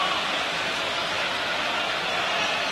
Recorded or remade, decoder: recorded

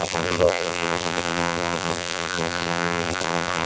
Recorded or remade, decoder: remade, vocoder, BigVGAN v2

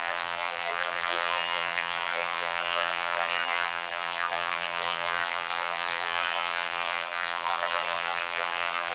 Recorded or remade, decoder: remade, vocoder, BigVGAN v2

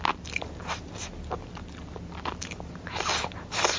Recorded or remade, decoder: recorded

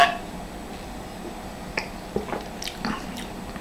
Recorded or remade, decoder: recorded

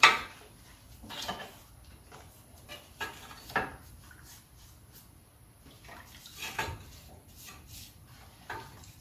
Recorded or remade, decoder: remade, vocoder, BigVGAN v2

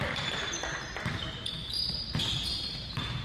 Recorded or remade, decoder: remade, vocoder, BigVGAN v2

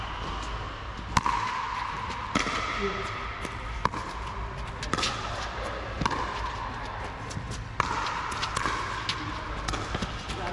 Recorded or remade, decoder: recorded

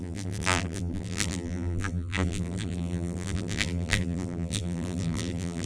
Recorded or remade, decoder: remade, vocoder, BigVGAN v2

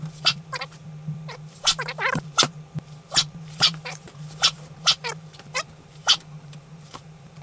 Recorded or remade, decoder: remade, vocoder, BigVGAN v2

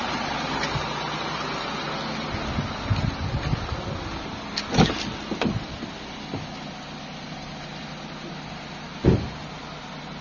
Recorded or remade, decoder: recorded